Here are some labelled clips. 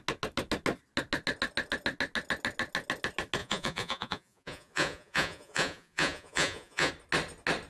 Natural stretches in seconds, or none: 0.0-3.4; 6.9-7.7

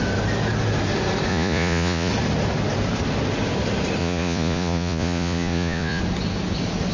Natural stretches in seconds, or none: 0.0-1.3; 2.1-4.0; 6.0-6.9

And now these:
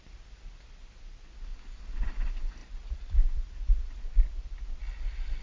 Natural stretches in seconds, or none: 0.0-2.6; 3.8-5.4

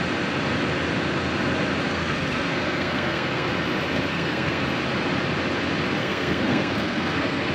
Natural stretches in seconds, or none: 0.0-1.9; 3.5-4.1; 4.6-6.0